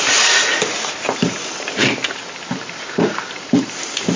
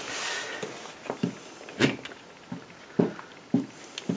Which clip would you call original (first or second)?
second